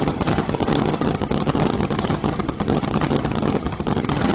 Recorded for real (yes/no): no